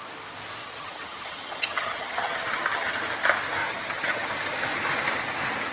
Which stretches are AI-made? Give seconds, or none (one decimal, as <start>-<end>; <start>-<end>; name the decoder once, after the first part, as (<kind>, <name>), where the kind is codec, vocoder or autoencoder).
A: 0.6-2.9 (vocoder, HiFi-GAN); 3.6-4.3